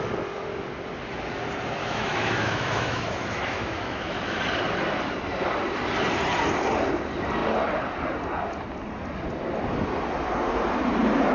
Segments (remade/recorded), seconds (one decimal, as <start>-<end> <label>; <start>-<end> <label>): 0.0-1.8 recorded; 1.8-4.4 remade; 4.4-11.3 recorded